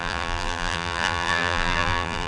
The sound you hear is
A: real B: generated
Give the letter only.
B